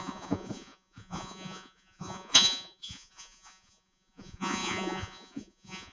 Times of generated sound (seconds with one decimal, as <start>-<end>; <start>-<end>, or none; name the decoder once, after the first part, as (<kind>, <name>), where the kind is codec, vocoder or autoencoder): 0.0-5.9 (vocoder, Vocos)